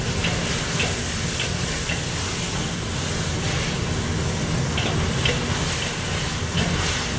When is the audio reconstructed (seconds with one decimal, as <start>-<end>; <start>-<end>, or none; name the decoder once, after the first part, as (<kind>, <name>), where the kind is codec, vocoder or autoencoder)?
none